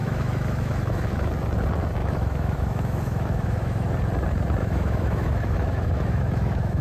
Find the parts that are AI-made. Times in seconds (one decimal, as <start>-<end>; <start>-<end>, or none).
0.0-1.3; 2.0-3.9; 4.6-6.8